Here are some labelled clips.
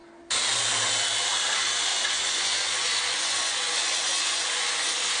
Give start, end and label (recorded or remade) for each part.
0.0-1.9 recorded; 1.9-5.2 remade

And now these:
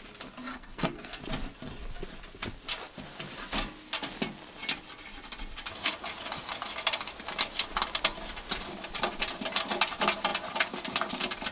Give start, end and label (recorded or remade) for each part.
0.0-0.5 recorded; 0.5-1.2 remade; 1.2-11.5 recorded

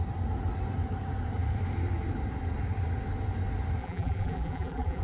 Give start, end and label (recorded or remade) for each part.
0.0-3.8 recorded; 3.8-5.0 remade

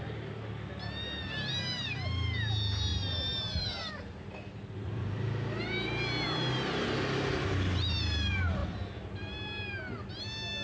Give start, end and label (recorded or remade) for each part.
0.0-2.9 recorded; 2.9-3.7 remade; 3.7-10.6 recorded

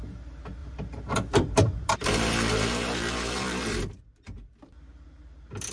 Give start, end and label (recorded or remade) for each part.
0.0-0.6 recorded; 0.6-4.0 remade; 4.0-5.7 recorded

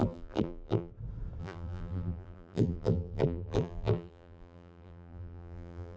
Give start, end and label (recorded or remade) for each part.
0.0-0.9 remade; 0.9-1.4 recorded; 1.4-6.0 remade

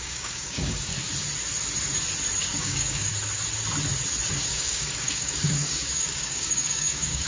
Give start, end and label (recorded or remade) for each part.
0.0-0.9 remade; 0.9-2.4 recorded; 2.4-3.1 remade; 3.1-4.5 recorded; 4.5-7.3 remade

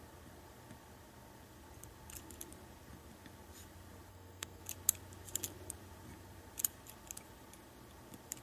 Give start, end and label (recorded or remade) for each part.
0.0-4.1 recorded; 4.1-4.6 remade; 4.6-8.4 recorded